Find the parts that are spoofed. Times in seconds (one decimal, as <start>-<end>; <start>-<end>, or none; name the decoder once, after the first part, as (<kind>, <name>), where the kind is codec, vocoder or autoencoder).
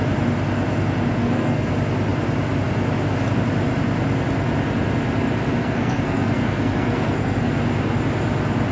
1.2-1.7 (codec, SNAC); 5.6-7.5